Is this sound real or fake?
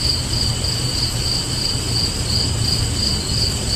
real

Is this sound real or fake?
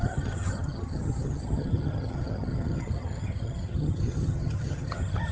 fake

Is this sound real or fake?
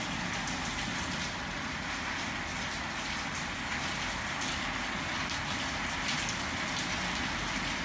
real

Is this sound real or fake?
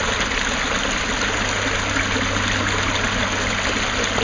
real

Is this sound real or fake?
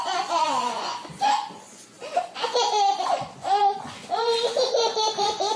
fake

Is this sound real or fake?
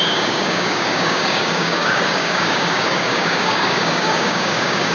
fake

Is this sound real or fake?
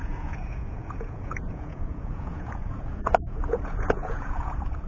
fake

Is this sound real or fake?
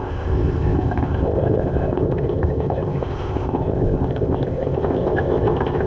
fake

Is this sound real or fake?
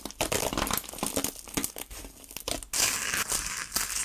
real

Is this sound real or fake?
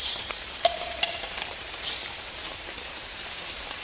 fake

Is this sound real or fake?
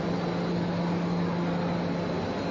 real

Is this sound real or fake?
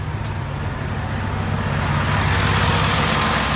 real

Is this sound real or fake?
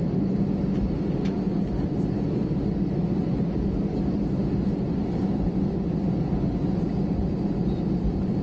real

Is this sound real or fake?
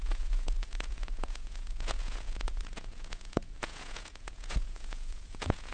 fake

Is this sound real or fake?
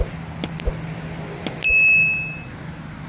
real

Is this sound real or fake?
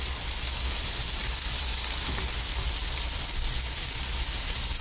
real